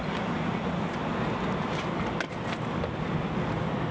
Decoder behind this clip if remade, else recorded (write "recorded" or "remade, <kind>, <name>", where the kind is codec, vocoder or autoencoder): recorded